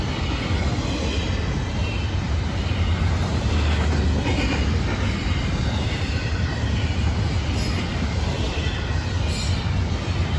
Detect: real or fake real